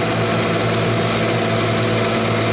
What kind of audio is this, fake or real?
real